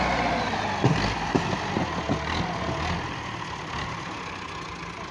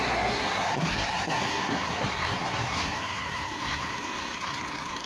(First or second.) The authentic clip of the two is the first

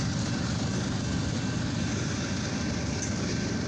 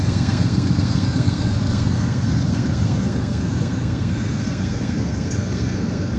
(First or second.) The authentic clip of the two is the first